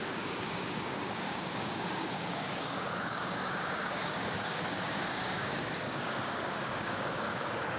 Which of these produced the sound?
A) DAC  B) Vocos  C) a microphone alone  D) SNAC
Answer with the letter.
A